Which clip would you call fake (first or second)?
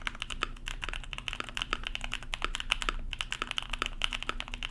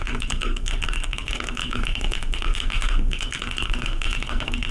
second